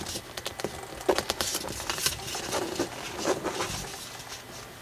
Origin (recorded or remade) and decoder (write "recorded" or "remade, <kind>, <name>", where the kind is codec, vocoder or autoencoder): recorded